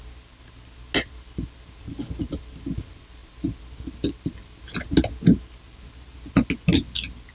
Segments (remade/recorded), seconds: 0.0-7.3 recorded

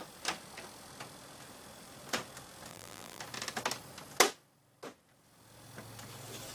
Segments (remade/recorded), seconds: 0.0-2.7 recorded; 2.7-3.2 remade; 3.2-6.5 recorded

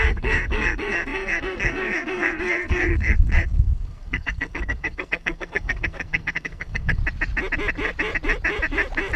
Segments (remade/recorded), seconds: 0.0-7.0 remade; 7.0-9.2 recorded

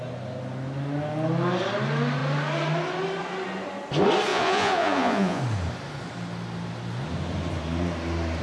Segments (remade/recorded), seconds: 0.0-4.3 recorded; 4.3-5.4 remade; 5.4-8.4 recorded

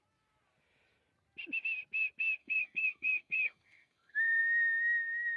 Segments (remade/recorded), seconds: 0.0-2.4 recorded; 2.4-4.4 remade; 4.4-5.4 recorded

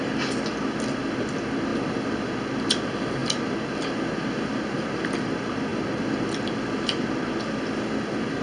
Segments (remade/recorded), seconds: 0.0-8.4 recorded

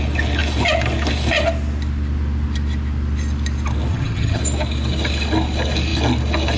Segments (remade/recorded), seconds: 0.0-3.9 recorded; 3.9-4.4 remade; 4.4-6.6 recorded